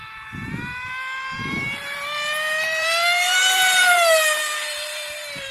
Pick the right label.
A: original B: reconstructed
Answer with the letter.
B